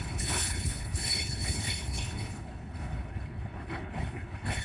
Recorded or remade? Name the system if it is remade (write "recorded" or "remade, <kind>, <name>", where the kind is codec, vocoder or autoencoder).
remade, codec, HILCodec